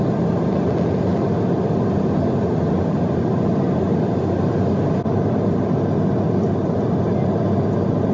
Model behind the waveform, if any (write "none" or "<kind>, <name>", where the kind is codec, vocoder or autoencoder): none